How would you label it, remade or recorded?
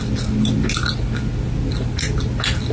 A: recorded